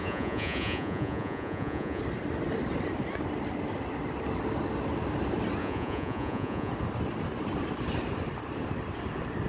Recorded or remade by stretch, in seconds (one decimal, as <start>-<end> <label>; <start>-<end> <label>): 0.0-2.0 remade; 2.0-5.6 recorded; 5.6-6.7 remade; 6.7-9.5 recorded